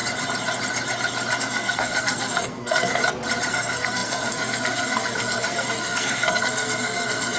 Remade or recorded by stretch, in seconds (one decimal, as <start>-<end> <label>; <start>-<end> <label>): 0.0-1.4 recorded; 1.4-3.0 remade; 3.0-3.5 recorded; 3.5-7.4 remade